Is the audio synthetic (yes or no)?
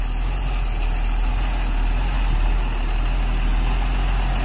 no